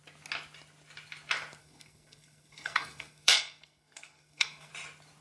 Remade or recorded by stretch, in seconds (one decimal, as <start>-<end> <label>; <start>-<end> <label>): 0.0-1.6 recorded; 1.6-4.7 remade; 4.7-5.2 recorded